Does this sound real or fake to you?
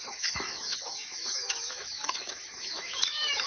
fake